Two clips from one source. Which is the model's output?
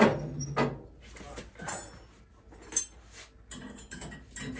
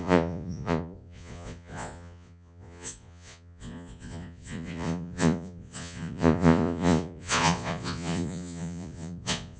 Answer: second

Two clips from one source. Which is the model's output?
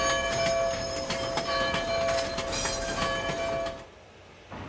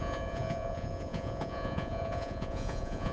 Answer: second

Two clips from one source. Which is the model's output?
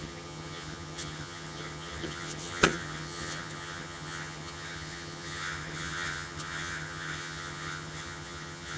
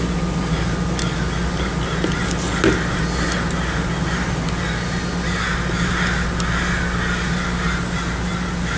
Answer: first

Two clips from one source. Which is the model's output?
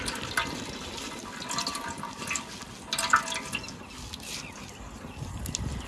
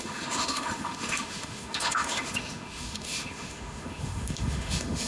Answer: second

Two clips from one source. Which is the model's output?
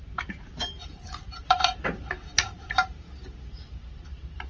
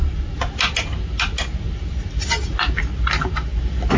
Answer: first